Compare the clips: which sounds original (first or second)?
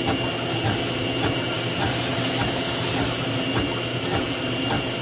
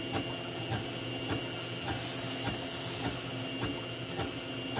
second